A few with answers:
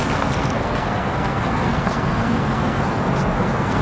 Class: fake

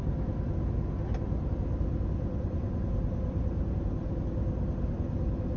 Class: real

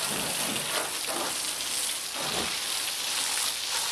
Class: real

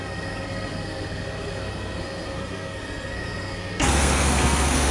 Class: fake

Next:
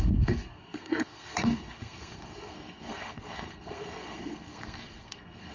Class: fake